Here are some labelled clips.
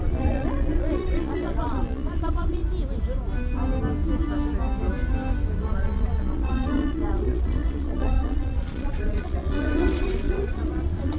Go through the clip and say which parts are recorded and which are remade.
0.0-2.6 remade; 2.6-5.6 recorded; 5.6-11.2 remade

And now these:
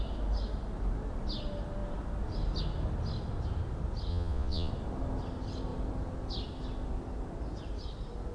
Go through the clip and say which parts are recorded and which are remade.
0.0-4.1 recorded; 4.1-4.7 remade; 4.7-8.3 recorded

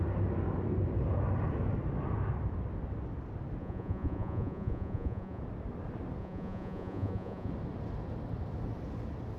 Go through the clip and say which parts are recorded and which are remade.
0.0-3.6 recorded; 3.6-5.4 remade; 5.4-6.2 recorded; 6.2-7.5 remade; 7.5-9.4 recorded